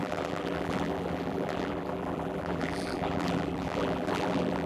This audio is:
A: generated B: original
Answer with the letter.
A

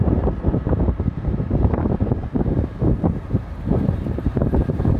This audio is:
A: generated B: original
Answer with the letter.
A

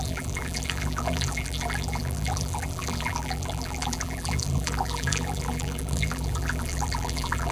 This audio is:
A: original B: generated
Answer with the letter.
B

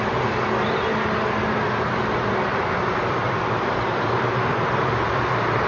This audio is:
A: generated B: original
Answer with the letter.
A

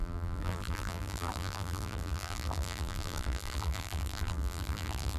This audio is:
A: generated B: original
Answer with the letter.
A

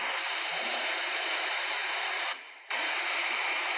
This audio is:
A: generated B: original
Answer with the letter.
A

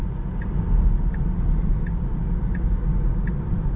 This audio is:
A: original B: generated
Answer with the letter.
A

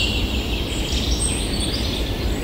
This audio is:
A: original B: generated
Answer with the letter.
A